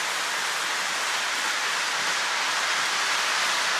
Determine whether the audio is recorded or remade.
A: recorded